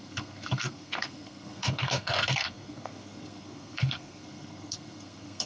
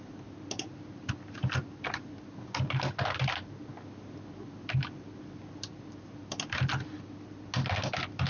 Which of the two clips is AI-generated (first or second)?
first